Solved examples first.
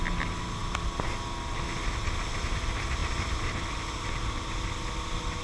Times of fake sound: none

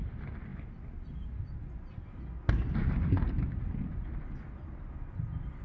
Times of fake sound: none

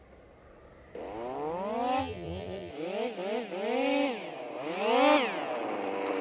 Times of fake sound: 2.0-2.7

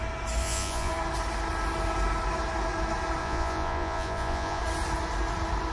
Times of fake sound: 0.4-0.9; 3.2-4.6

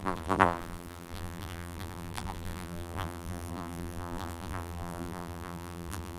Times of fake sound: 0.0-6.2